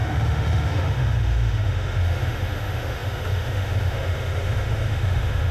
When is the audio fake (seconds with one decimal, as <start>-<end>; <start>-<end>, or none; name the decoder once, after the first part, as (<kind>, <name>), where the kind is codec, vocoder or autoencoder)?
0.0-5.5 (autoencoder, DAC-VAE)